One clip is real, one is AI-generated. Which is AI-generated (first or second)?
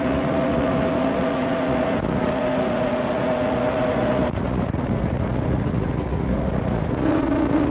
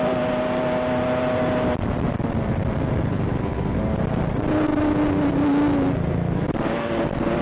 first